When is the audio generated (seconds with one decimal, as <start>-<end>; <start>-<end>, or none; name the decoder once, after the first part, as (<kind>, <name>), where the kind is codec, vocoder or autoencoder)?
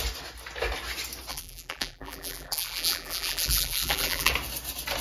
1.3-4.3 (vocoder, BigVGAN v2)